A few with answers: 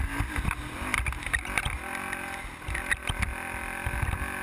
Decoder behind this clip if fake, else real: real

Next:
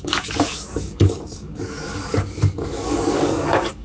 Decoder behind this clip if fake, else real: fake, codec, DAC